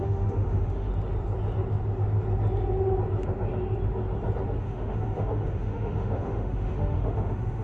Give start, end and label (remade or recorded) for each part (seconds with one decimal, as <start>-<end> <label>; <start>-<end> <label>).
0.0-0.9 remade; 0.9-4.6 recorded; 4.6-7.6 remade